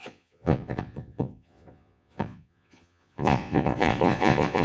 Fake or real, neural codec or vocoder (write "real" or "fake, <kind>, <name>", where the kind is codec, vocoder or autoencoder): fake, vocoder, Vocos